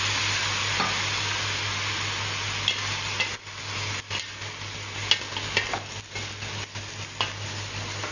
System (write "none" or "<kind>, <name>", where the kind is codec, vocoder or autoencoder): none